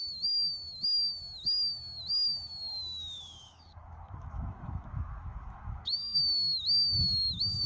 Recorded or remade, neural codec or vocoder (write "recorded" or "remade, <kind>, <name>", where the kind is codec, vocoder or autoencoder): remade, autoencoder, DAC-VAE